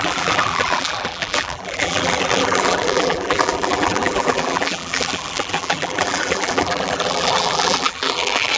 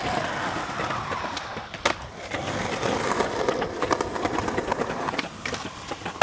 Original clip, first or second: second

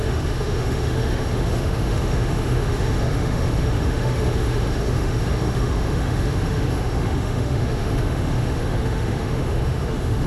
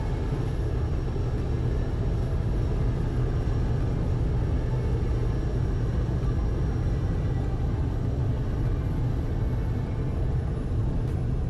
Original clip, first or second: second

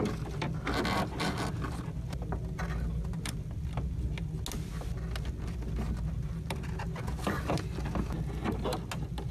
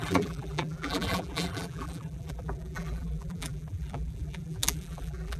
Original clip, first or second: first